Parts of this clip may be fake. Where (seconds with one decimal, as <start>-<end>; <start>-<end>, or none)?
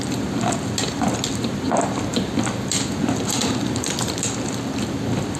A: none